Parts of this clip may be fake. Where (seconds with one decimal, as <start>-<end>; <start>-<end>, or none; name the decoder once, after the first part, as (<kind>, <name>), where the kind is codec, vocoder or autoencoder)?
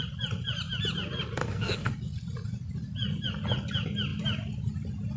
1.4-1.9 (codec, SNAC)